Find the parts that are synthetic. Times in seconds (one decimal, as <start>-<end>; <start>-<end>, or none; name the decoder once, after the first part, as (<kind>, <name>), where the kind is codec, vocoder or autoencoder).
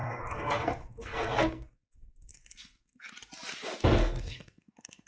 0.0-3.1 (codec, SNAC); 4.0-5.1